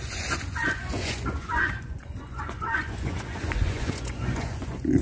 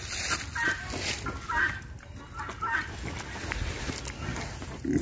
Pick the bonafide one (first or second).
second